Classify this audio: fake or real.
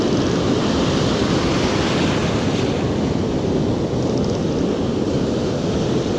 real